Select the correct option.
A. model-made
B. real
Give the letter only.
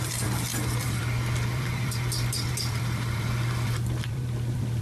A